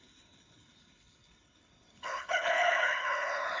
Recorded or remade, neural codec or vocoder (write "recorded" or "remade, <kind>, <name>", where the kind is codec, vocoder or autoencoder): remade, codec, HILCodec